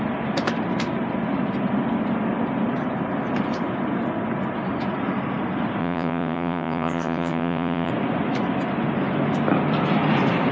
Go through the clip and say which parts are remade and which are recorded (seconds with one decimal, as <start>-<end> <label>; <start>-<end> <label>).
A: 0.0-5.8 recorded; 5.8-7.9 remade; 7.9-10.5 recorded